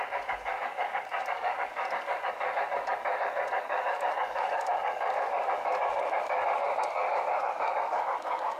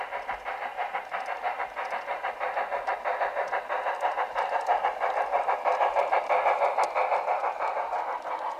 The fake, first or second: first